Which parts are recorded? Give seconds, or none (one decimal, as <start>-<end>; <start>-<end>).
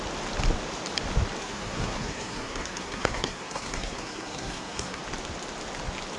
0.0-1.4; 5.0-6.2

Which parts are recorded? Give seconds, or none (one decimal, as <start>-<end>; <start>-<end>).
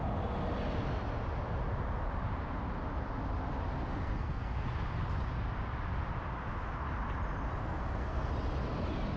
0.0-3.9; 4.6-7.6; 8.3-9.2